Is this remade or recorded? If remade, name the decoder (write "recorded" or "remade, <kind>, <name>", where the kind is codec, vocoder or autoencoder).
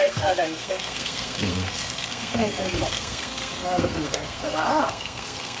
remade, codec, SNAC